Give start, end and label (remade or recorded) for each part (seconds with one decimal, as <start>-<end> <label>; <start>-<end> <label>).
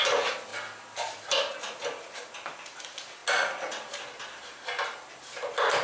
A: 0.0-5.8 recorded